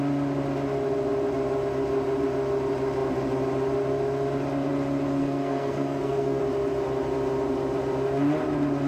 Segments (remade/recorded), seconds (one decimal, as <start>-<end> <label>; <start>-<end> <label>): 0.0-5.2 recorded; 5.2-6.4 remade; 6.4-8.9 recorded